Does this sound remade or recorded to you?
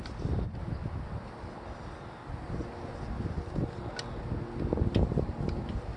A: recorded